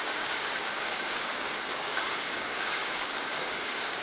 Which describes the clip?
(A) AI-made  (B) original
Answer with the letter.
A